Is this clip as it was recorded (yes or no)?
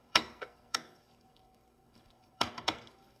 no